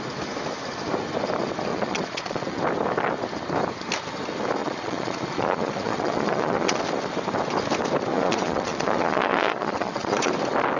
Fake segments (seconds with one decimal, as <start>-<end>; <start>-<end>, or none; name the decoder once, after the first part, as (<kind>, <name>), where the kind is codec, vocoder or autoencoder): 1.7-2.6 (vocoder, Vocos); 4.6-6.8; 8.1-10.3